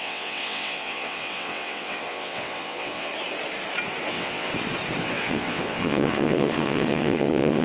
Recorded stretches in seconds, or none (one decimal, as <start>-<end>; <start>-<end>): 3.1-4.1; 4.5-5.0

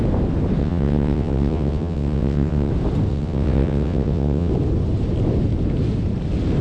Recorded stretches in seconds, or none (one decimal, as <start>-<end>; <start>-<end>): 0.0-0.6; 2.7-3.1; 4.5-6.6

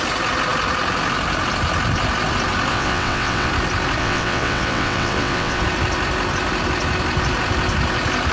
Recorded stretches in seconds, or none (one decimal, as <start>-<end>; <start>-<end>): 0.0-2.7; 3.5-4.0; 5.6-8.3

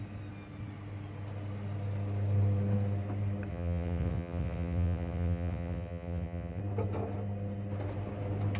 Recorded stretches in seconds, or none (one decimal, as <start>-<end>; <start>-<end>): 0.0-3.5; 6.6-8.6